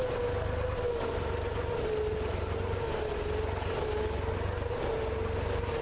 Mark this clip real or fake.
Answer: real